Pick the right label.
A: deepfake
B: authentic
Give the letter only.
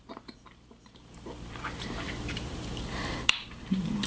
A